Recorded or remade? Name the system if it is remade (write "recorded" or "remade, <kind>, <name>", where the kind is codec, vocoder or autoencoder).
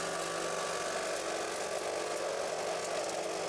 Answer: recorded